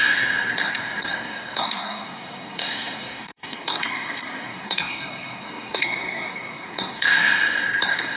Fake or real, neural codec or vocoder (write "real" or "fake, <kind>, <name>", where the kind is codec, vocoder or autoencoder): fake, codec, SNAC